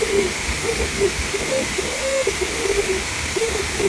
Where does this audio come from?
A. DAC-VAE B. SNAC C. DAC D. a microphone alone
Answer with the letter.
A